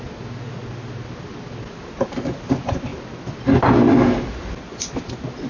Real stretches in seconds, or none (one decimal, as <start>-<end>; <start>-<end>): 0.0-5.5